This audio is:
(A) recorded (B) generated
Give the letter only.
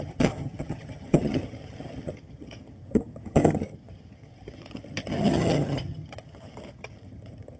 B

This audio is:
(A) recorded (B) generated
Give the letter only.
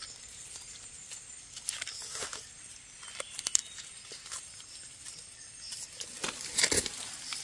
A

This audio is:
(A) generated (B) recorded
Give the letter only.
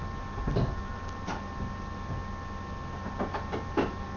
B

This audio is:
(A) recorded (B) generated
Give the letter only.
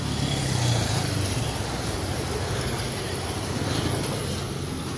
A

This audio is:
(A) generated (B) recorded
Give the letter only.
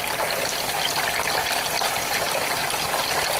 B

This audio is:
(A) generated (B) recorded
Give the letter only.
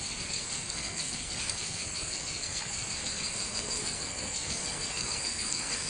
A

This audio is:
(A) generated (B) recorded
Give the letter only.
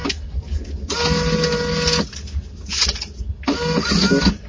B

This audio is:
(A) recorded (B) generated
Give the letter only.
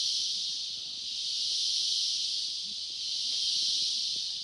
A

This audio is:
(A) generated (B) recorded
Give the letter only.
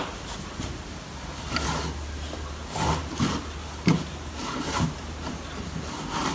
B